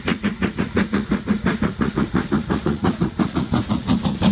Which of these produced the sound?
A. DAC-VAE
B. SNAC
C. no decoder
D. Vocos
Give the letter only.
D